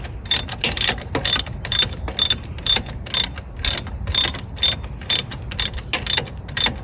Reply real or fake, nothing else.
real